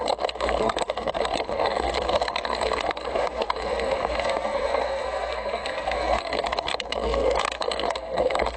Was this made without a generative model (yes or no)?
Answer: no